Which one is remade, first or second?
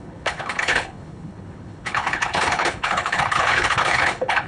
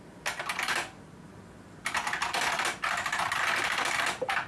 first